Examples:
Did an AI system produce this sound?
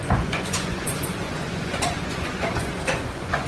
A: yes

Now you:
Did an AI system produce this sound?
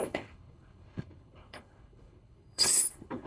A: yes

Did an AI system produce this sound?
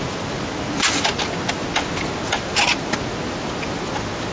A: no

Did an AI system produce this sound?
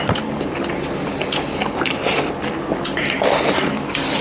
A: no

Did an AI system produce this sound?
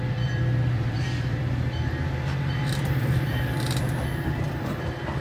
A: yes